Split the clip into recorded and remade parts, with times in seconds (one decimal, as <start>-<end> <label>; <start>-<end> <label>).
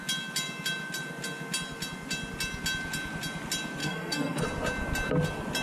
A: 0.0-3.8 recorded; 3.8-4.4 remade; 4.4-5.6 recorded